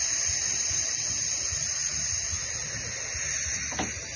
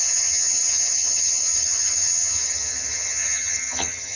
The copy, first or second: second